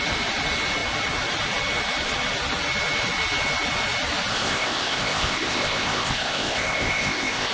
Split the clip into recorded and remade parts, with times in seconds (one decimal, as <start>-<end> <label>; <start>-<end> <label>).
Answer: 0.0-4.3 recorded; 4.3-7.5 remade